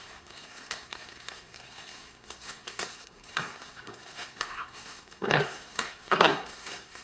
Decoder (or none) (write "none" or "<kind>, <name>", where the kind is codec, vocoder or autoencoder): codec, SNAC